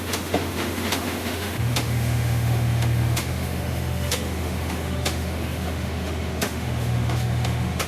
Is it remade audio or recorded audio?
remade